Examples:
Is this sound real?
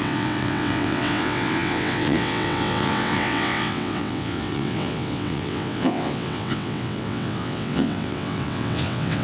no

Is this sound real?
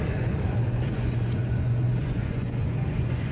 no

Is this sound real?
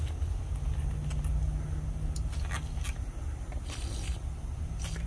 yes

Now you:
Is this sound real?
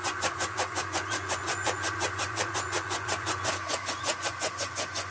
no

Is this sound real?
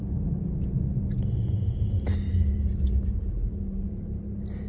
yes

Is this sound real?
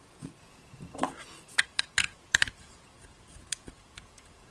no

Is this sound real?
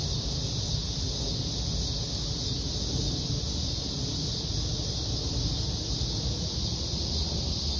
yes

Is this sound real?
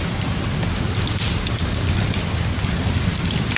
yes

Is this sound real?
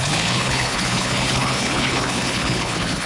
no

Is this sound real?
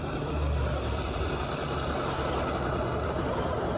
yes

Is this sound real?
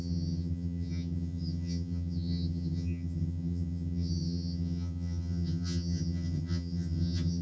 no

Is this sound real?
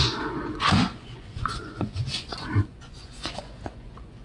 no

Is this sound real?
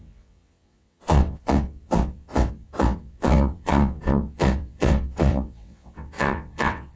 no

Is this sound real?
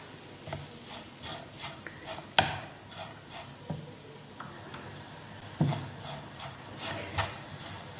yes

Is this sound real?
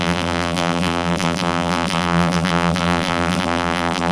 no